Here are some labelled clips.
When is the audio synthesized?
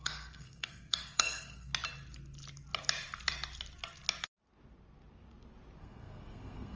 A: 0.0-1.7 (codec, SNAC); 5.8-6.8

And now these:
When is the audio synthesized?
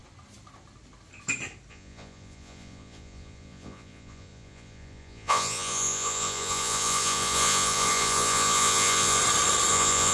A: 1.7-9.2 (vocoder, Vocos); 9.7-10.1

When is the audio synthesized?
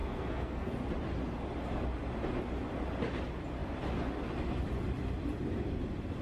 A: 0.0-0.7 (codec, SNAC)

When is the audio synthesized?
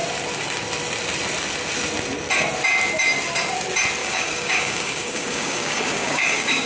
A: 4.0-6.7 (codec, DAC)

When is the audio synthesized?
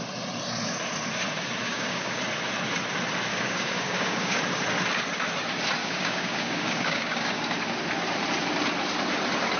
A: 1.6-2.2 (codec, DAC); 3.3-4.4; 5.8-7.4